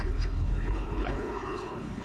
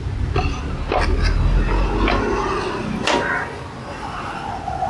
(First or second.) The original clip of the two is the second